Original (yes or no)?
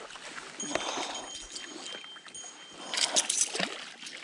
yes